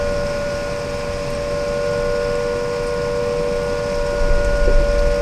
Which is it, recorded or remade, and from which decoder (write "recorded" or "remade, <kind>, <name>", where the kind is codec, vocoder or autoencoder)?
recorded